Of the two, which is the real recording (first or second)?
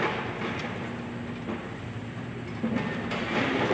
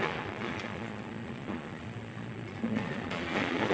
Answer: first